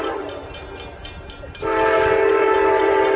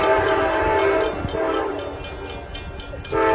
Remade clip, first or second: first